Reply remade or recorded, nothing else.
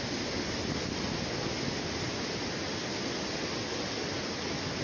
recorded